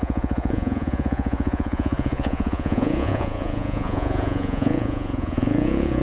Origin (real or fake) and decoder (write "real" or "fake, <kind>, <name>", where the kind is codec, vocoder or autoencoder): fake, vocoder, Vocos